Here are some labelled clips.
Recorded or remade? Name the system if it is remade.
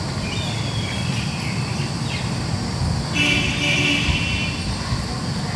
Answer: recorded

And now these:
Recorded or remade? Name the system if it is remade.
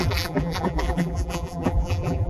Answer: remade, vocoder, BigVGAN v2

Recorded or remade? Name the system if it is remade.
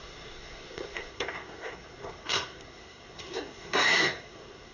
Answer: remade, codec, SNAC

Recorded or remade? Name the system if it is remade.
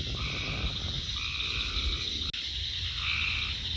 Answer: recorded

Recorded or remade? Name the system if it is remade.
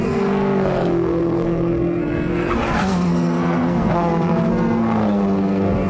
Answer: remade, codec, SNAC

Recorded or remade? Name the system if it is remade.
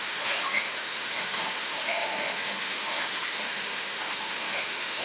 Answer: remade, autoencoder, DAC-VAE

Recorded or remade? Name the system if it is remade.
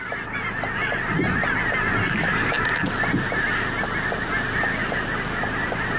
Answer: recorded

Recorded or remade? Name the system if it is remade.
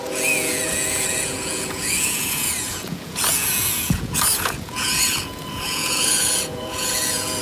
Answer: remade, vocoder, Vocos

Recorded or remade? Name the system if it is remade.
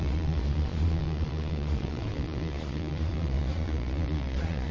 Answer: remade, vocoder, Vocos